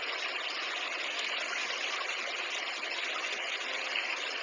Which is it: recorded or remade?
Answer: recorded